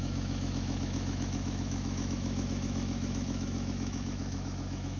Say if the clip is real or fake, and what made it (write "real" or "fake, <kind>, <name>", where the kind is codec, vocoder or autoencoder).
fake, autoencoder, DAC-VAE